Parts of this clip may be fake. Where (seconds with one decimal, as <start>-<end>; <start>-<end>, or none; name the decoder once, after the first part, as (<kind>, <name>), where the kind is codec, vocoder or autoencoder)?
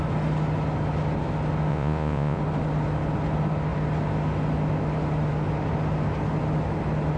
1.7-2.4 (vocoder, Vocos)